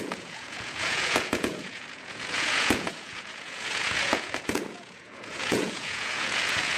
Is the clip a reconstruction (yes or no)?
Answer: yes